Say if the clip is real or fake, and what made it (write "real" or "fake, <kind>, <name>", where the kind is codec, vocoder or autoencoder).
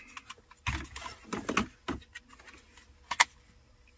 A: real